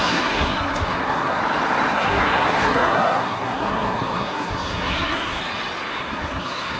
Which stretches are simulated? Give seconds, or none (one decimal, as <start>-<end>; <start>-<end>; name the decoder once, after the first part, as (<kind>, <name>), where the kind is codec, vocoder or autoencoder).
0.0-1.4 (codec, SNAC); 1.9-5.4; 5.9-6.8